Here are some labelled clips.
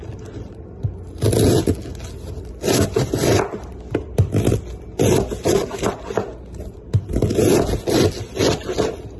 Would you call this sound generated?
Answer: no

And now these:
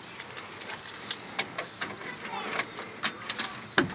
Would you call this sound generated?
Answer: no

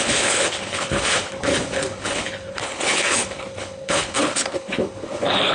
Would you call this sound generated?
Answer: yes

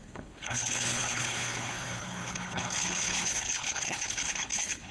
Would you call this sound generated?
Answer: yes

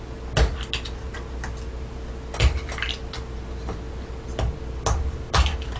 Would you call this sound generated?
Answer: no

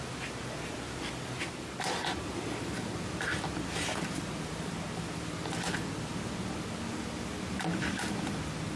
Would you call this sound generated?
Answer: no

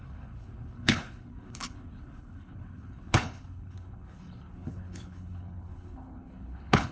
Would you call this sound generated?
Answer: yes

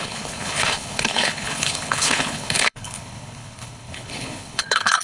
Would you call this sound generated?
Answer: yes